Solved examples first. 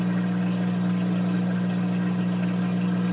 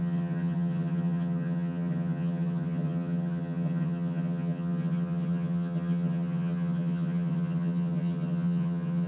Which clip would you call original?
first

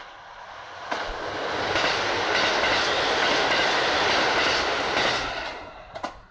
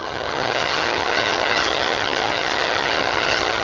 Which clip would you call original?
first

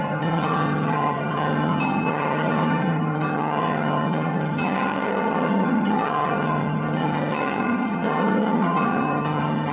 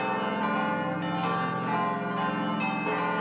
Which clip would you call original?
second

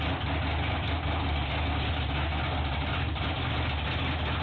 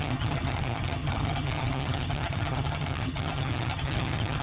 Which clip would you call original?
first